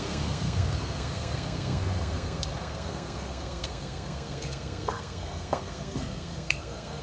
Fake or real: fake